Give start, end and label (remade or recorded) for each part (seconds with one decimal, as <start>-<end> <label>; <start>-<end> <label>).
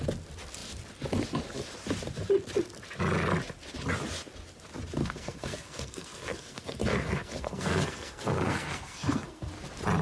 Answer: 0.0-5.0 recorded; 5.0-9.5 remade; 9.5-10.0 recorded